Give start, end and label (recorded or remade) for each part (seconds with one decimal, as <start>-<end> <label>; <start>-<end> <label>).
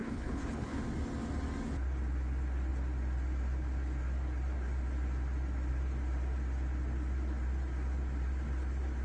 0.0-0.8 remade; 0.8-9.0 recorded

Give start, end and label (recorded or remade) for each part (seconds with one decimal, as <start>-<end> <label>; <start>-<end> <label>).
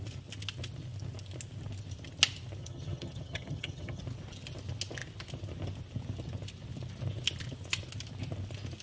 0.0-2.6 recorded; 2.6-4.0 remade; 4.0-8.8 recorded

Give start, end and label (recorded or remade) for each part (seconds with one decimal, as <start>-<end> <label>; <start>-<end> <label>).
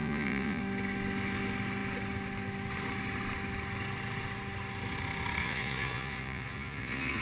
0.0-0.6 remade; 0.6-5.4 recorded; 5.4-7.2 remade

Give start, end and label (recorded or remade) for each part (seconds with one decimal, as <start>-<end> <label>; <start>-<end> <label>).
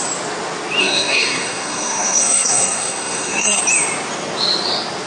0.0-0.8 recorded; 0.8-3.6 remade; 3.6-5.1 recorded